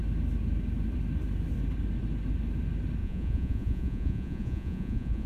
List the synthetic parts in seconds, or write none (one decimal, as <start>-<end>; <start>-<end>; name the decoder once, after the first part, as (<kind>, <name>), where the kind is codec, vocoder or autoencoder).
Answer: 3.0-5.3 (vocoder, Vocos)